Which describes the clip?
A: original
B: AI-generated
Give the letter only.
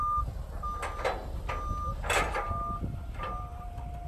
A